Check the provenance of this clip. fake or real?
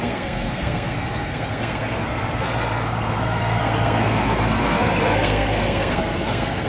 fake